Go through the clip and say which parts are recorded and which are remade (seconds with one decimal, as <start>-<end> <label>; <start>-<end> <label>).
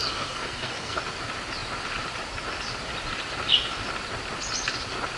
0.0-1.0 remade; 1.0-5.2 recorded